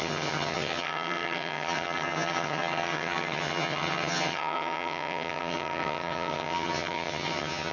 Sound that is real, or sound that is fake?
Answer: fake